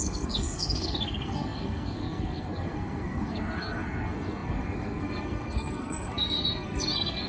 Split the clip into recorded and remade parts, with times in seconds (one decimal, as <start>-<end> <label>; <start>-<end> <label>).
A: 0.0-7.3 remade